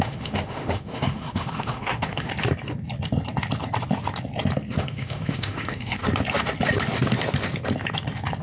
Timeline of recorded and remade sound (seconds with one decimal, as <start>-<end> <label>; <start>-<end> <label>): 0.0-2.3 remade; 2.3-4.8 recorded; 4.8-6.0 remade; 6.0-8.4 recorded

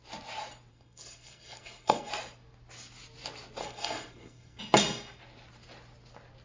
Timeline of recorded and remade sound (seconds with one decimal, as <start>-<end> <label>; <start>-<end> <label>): 0.0-0.7 recorded; 0.7-2.1 remade; 2.1-3.6 recorded; 3.6-4.6 remade; 4.6-6.4 recorded

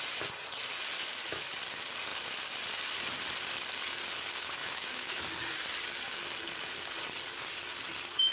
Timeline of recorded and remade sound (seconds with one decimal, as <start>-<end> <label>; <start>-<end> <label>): 0.0-4.6 recorded; 4.6-5.2 remade; 5.2-8.3 recorded